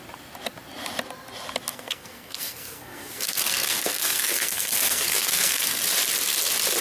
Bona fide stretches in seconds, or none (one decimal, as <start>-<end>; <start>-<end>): 0.0-1.7; 5.8-6.8